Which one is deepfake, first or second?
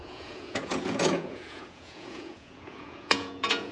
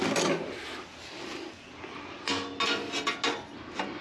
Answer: first